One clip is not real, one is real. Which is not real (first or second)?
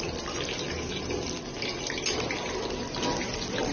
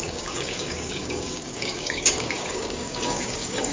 second